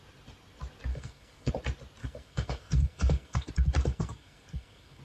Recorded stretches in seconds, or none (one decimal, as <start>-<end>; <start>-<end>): 0.0-0.9; 1.5-2.0; 3.5-3.9

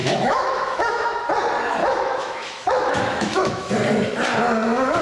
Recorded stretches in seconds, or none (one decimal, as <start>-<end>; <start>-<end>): 1.2-1.8; 3.7-5.0